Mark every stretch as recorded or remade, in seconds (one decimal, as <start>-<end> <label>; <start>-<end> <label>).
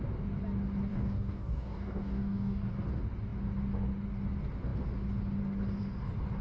0.0-0.9 recorded; 0.9-2.7 remade; 2.7-6.4 recorded